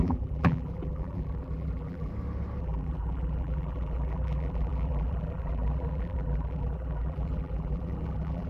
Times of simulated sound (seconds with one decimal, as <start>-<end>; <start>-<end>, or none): 0.0-2.1; 2.6-8.5